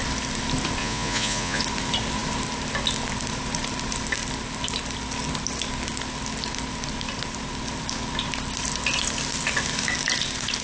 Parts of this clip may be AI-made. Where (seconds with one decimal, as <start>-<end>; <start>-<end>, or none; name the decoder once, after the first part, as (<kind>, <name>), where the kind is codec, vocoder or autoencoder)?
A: 0.8-1.6 (vocoder, Vocos)